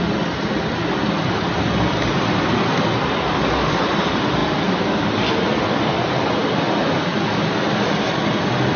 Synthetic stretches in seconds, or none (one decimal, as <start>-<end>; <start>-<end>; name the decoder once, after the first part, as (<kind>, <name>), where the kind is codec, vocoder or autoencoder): 6.4-6.9 (vocoder, BigVGAN v2)